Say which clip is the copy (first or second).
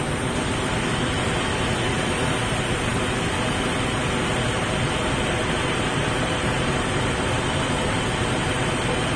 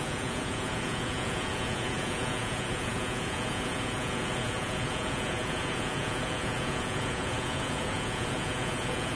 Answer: second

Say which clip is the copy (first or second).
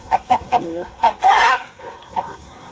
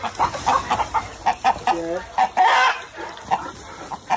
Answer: first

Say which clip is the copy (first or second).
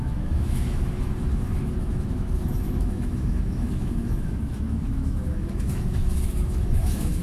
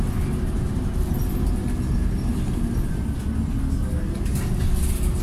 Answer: first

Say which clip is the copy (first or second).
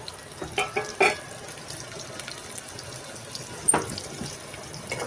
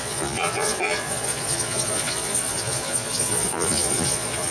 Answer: second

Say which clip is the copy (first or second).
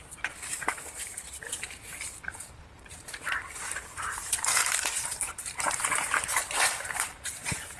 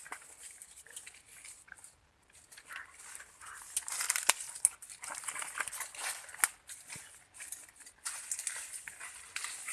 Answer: first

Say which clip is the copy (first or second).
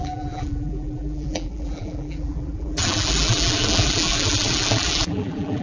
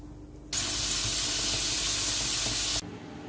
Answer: first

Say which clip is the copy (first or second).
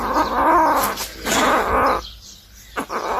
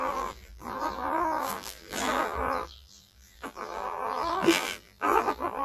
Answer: second